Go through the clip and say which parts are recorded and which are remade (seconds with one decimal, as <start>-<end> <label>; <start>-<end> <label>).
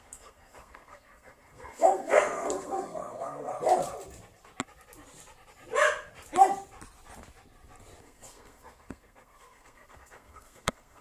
0.0-3.5 remade; 3.5-8.0 recorded; 8.0-11.0 remade